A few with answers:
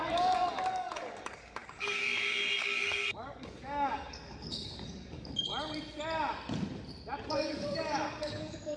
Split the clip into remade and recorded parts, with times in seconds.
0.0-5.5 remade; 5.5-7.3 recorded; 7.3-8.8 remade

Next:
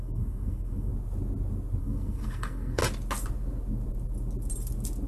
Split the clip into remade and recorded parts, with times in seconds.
0.0-0.9 remade; 0.9-1.8 recorded; 1.8-2.8 remade; 2.8-5.1 recorded

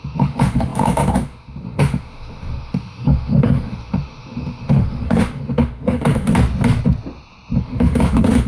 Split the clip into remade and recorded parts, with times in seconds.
0.0-6.3 remade; 6.3-7.6 recorded; 7.6-8.5 remade

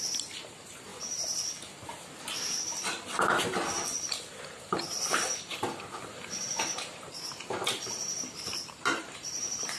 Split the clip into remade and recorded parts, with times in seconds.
0.0-0.9 remade; 0.9-4.3 recorded; 4.3-9.8 remade

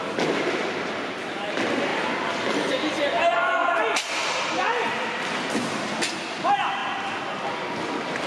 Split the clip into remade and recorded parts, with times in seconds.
0.0-8.3 recorded